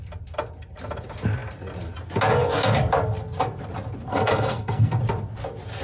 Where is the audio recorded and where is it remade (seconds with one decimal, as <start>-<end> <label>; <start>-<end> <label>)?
0.0-4.1 recorded; 4.1-5.0 remade; 5.0-5.8 recorded